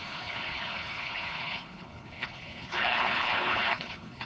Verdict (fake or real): fake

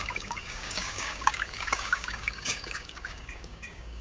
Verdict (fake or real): fake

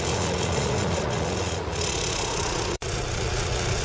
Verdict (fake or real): fake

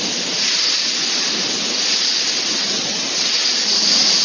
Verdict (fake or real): real